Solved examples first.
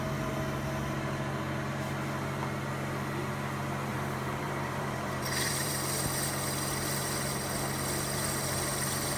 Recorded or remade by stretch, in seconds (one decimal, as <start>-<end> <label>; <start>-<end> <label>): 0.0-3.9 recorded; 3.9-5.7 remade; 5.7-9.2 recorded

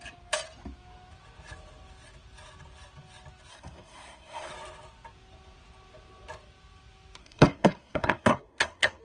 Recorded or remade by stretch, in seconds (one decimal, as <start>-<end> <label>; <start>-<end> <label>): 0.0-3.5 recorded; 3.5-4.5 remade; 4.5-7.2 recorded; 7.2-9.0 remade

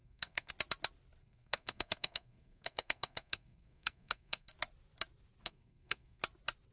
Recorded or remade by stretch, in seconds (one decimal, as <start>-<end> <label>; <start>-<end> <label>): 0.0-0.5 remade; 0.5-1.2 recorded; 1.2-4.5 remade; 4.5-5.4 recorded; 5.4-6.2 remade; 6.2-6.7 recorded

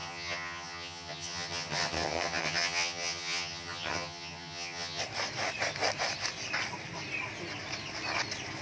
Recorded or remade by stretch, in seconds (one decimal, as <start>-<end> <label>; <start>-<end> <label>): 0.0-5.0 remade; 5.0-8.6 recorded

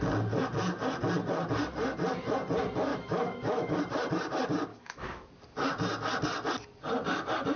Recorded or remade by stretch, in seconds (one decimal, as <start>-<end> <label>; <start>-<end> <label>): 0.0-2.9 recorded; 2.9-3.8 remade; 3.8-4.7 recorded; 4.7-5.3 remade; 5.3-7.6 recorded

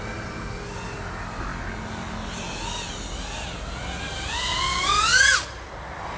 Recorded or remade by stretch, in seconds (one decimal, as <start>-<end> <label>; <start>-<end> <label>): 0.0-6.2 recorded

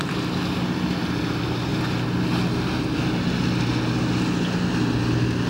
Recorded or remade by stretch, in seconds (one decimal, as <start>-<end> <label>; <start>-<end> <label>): 0.0-5.5 recorded

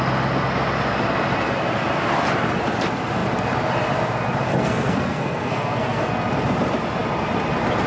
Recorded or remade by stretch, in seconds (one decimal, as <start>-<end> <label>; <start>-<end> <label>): 0.0-4.5 recorded; 4.5-6.1 remade; 6.1-7.9 recorded